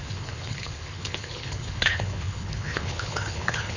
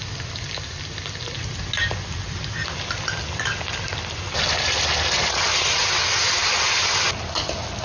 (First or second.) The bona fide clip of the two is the second